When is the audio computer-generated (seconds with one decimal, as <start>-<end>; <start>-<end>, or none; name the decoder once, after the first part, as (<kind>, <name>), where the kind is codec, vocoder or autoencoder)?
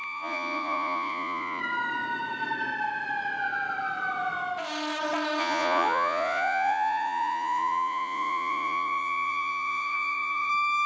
0.0-1.6 (vocoder, Vocos); 5.4-10.5